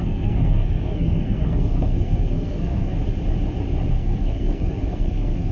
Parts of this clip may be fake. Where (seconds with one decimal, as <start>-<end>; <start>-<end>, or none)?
0.0-2.9; 3.9-5.5